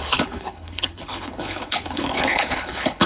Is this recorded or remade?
remade